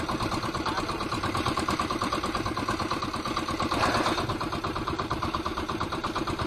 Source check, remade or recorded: remade